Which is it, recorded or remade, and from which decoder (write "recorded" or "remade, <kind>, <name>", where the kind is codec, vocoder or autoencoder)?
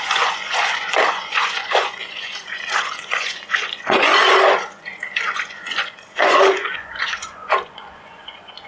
remade, vocoder, Vocos